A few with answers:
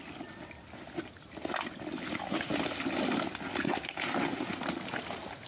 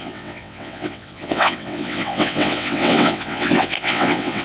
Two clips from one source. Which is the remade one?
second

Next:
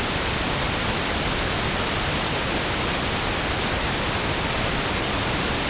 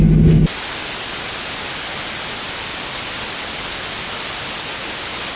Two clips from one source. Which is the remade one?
first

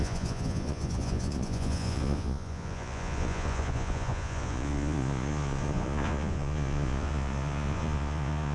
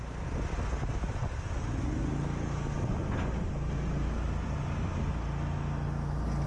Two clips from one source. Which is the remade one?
first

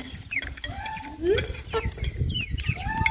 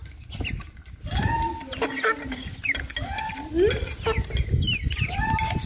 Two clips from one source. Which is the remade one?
first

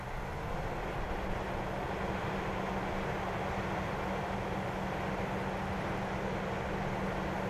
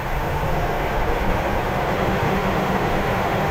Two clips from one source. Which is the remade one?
second